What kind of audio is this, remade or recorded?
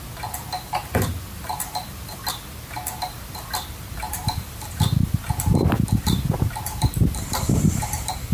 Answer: remade